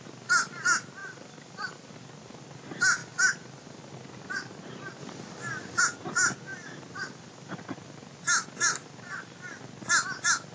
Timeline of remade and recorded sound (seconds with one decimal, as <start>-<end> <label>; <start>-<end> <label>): 0.0-1.0 recorded; 1.0-1.9 remade; 1.9-3.0 recorded; 3.0-3.8 remade; 3.8-5.0 recorded; 5.0-5.8 remade; 5.8-6.5 recorded; 6.5-7.6 remade; 7.6-10.5 recorded